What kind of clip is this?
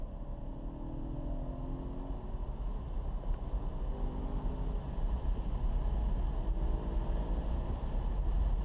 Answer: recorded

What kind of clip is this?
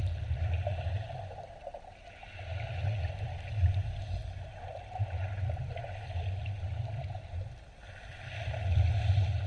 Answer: recorded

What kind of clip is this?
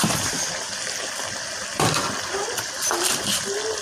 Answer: remade